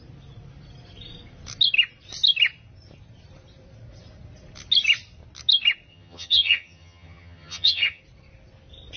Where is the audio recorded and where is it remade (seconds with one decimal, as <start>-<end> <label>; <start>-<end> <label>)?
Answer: 0.0-5.9 recorded; 5.9-8.0 remade; 8.0-9.0 recorded